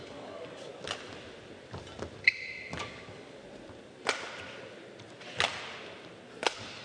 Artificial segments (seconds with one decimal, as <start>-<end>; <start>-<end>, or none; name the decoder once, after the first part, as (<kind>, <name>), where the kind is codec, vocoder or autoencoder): 0.0-0.7 (codec, DAC); 2.8-3.4

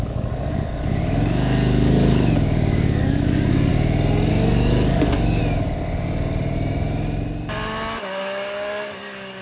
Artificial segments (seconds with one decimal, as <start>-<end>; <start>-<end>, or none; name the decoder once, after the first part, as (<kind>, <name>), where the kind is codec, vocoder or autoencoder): 0.0-3.7 (codec, DAC); 4.3-5.4; 8.0-9.4